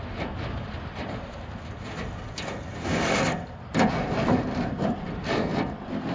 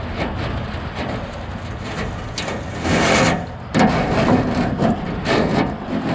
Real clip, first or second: second